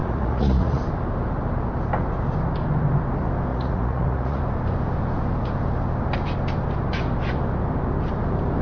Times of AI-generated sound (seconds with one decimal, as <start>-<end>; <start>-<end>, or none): 0.0-0.8; 3.5-4.4